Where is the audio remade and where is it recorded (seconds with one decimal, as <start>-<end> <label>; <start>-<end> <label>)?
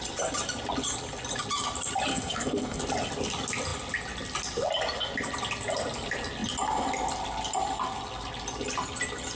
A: 0.0-2.1 recorded; 2.1-2.8 remade; 2.8-9.4 recorded